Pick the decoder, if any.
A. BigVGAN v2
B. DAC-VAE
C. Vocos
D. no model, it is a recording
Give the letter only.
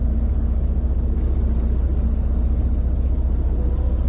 D